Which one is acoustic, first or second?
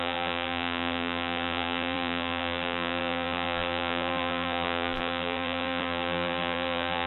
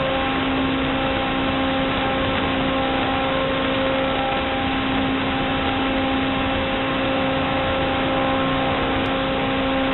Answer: second